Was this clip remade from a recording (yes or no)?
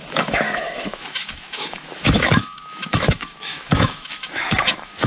yes